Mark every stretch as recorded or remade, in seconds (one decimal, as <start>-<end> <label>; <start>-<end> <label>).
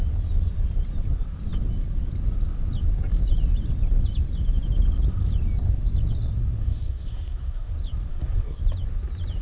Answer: 0.0-6.6 recorded; 6.6-7.7 remade; 7.7-8.1 recorded; 8.1-8.6 remade; 8.6-9.4 recorded